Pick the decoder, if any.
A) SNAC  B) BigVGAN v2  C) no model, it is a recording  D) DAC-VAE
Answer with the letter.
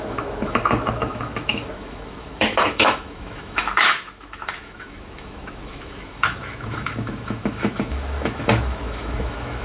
D